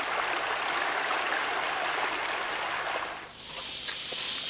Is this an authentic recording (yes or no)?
yes